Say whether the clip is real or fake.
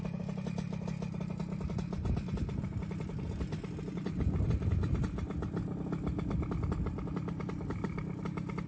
real